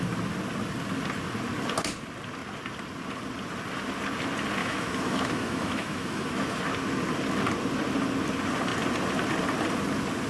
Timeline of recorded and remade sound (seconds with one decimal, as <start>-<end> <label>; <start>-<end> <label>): 0.0-4.6 recorded; 4.6-6.6 remade; 6.6-10.3 recorded